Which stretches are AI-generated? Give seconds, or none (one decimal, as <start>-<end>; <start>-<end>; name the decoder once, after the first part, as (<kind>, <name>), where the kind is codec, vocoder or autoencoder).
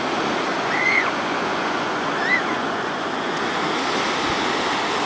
0.5-3.4 (vocoder, Vocos)